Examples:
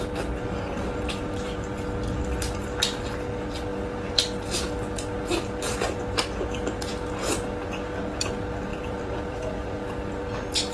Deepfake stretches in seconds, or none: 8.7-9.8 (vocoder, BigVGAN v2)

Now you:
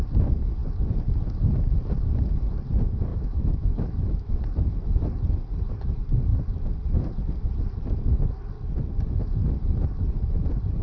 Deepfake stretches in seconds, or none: 3.1-4.4 (autoencoder, DAC-VAE)

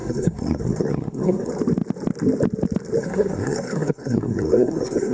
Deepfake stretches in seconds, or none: 0.0-1.5 (codec, SNAC); 3.0-5.1

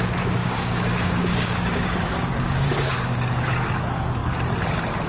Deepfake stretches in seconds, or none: 0.4-3.5 (codec, DAC)

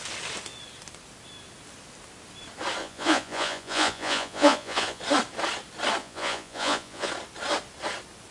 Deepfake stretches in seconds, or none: 2.8-5.0 (vocoder, Vocos); 6.0-7.1

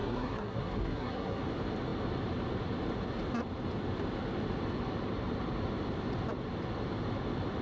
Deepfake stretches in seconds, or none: 0.0-1.4 (codec, SNAC)